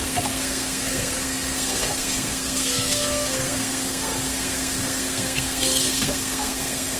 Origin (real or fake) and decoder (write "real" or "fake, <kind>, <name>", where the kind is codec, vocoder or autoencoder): fake, codec, SNAC